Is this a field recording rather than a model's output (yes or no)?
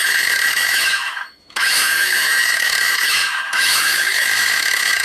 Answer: no